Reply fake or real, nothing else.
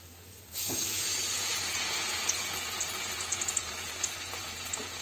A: fake